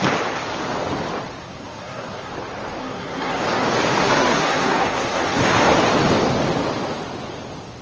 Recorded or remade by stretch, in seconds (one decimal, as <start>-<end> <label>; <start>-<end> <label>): 0.0-1.4 recorded; 1.4-2.3 remade; 2.3-2.8 recorded; 2.8-3.4 remade; 3.4-4.0 recorded; 4.0-5.4 remade; 5.4-7.8 recorded